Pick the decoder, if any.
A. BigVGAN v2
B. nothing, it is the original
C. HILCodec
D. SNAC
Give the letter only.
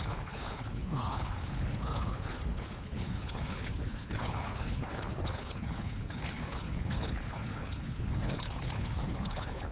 C